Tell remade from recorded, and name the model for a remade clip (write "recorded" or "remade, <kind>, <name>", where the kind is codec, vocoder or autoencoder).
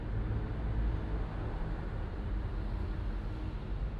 recorded